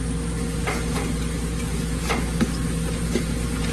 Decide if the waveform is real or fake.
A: real